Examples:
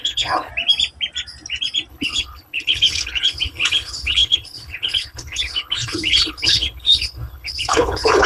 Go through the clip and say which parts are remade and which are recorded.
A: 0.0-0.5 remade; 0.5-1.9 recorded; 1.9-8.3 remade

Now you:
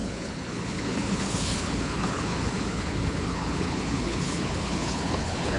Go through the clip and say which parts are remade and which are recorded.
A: 0.0-5.6 remade

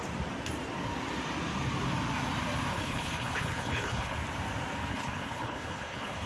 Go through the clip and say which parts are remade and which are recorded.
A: 0.0-2.7 recorded; 2.7-4.2 remade; 4.2-4.9 recorded; 4.9-6.3 remade

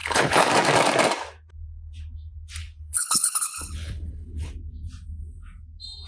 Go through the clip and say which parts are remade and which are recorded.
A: 0.0-0.5 remade; 0.5-2.6 recorded; 2.6-4.5 remade; 4.5-6.1 recorded

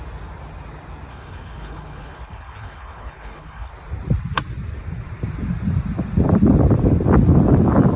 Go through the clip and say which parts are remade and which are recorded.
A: 0.0-1.1 recorded; 1.1-3.7 remade; 3.7-8.0 recorded

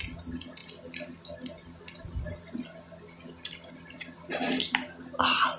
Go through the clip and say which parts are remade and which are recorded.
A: 0.0-5.6 recorded